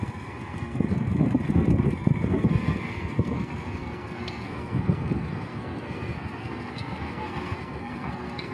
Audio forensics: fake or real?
fake